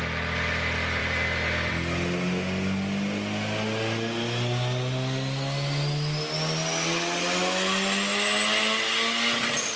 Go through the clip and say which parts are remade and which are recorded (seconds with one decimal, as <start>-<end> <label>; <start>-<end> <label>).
0.0-9.8 recorded